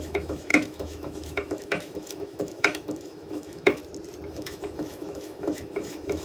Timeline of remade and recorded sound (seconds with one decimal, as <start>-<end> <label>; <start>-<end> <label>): 0.0-3.8 remade; 3.8-4.3 recorded; 4.3-6.2 remade